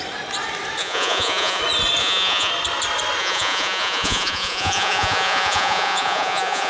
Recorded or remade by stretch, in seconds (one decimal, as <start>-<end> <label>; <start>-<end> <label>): 0.0-0.8 recorded; 0.8-1.6 remade; 1.6-2.0 recorded; 2.0-2.5 remade; 2.5-3.2 recorded; 3.2-6.7 remade